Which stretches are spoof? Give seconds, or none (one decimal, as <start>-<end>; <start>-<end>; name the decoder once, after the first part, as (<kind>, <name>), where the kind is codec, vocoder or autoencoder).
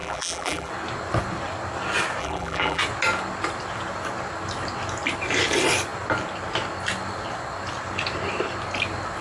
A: 0.0-0.7 (vocoder, BigVGAN v2); 2.2-2.8